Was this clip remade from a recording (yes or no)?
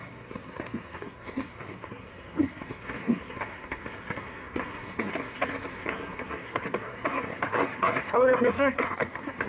yes